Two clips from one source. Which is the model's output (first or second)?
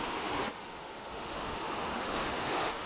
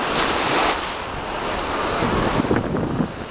first